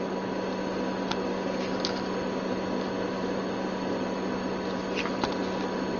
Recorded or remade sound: recorded